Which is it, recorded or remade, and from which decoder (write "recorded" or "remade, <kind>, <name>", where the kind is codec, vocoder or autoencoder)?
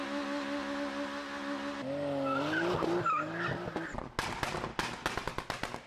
recorded